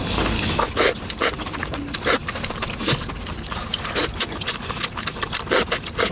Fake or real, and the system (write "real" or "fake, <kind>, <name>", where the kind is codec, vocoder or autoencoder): real